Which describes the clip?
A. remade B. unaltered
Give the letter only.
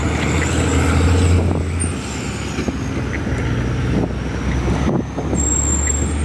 B